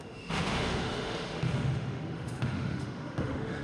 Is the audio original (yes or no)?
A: no